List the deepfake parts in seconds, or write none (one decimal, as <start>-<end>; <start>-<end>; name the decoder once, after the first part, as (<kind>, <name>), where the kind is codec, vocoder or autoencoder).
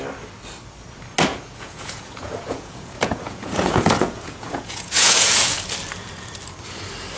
1.3-5.6 (vocoder, Vocos)